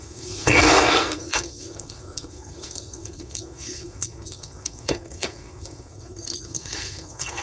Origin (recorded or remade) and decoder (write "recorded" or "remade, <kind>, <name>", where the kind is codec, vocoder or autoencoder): remade, codec, SNAC